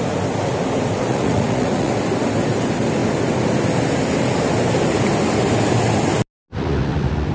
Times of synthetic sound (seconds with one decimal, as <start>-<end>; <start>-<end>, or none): 1.1-1.9; 6.5-7.3

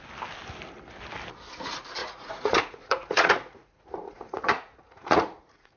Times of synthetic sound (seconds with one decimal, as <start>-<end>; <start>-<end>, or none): 2.0-5.8

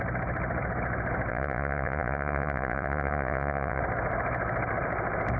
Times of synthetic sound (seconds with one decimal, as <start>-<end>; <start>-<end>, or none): 1.3-3.8

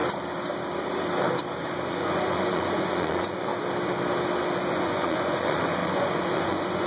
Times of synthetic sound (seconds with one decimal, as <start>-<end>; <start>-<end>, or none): 1.9-3.5; 4.7-6.9

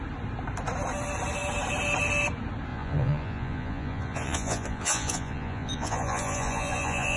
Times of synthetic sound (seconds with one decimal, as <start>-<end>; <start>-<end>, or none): 2.7-7.2